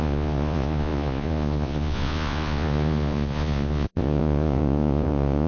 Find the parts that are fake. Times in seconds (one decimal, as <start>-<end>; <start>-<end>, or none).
0.0-5.5